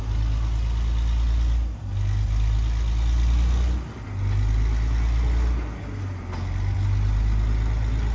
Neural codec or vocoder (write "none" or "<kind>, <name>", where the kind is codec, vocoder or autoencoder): none